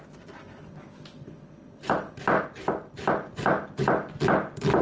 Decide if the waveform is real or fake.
real